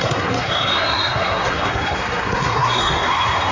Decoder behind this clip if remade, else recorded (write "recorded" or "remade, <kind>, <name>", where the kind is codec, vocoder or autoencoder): remade, codec, SNAC